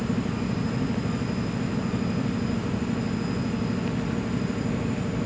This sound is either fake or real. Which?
real